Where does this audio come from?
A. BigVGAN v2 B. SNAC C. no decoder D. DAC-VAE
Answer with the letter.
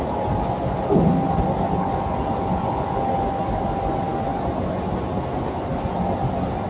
C